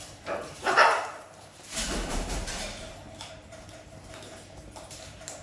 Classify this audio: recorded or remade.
remade